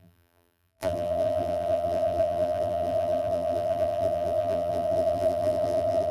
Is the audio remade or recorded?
remade